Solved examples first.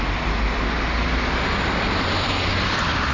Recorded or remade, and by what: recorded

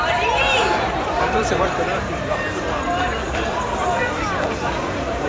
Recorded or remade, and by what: remade, vocoder, BigVGAN v2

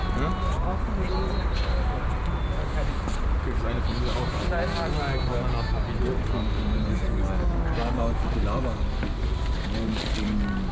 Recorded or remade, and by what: recorded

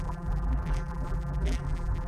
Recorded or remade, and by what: remade, vocoder, BigVGAN v2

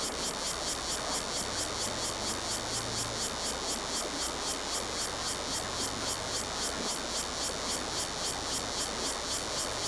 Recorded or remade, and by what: recorded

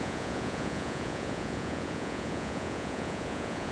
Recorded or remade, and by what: remade, vocoder, Vocos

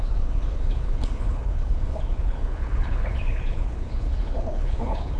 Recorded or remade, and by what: remade, codec, HILCodec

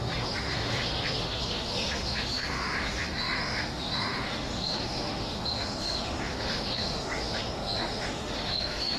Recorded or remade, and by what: remade, autoencoder, DAC-VAE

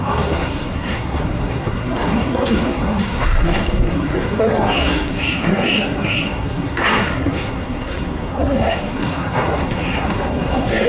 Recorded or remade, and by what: remade, codec, SNAC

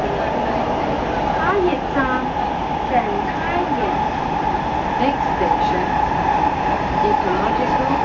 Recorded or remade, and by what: recorded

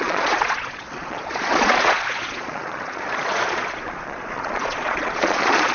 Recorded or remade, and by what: remade, vocoder, Vocos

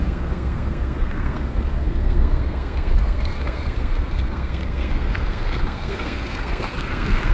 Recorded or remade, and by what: remade, codec, SNAC